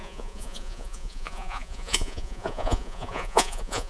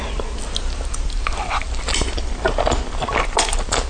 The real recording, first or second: second